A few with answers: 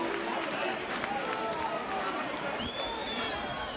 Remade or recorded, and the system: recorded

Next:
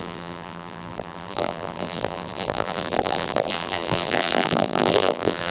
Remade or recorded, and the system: remade, vocoder, BigVGAN v2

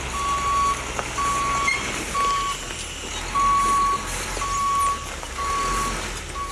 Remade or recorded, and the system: recorded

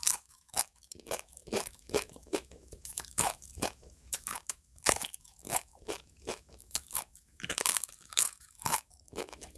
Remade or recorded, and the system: remade, autoencoder, DAC-VAE